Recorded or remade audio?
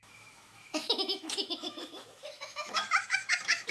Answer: remade